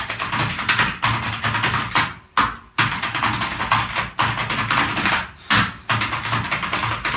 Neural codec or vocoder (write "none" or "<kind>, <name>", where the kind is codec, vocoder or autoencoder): none